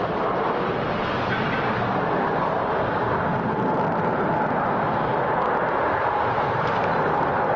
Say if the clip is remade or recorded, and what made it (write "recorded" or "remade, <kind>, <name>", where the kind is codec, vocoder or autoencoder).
recorded